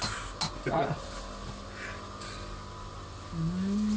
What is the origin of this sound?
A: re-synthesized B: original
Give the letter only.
B